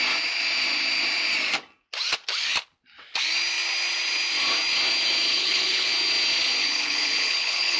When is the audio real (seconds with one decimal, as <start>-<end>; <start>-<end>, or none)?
0.0-5.3; 5.9-6.6